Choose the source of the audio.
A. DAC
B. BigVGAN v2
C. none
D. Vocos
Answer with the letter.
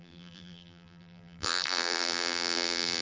B